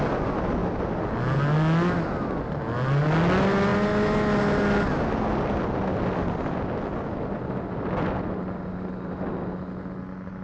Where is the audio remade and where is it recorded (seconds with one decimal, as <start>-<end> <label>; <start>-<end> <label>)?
0.0-10.4 recorded